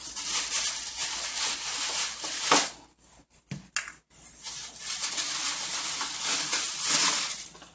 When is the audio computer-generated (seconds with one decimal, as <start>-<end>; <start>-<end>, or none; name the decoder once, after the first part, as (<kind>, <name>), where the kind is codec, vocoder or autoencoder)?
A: none